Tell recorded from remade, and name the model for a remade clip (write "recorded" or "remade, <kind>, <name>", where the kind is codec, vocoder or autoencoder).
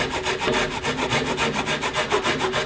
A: recorded